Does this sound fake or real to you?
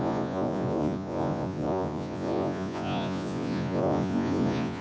fake